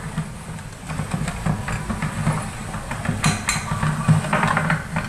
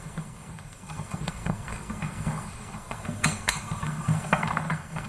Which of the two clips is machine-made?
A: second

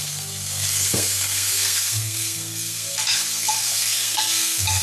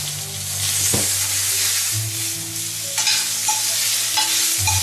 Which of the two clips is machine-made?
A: first